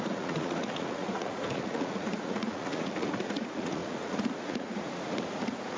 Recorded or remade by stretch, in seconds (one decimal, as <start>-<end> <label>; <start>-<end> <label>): 0.0-5.8 remade